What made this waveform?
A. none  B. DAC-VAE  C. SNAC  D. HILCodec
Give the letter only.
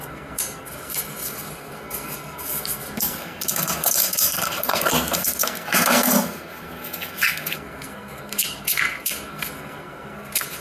C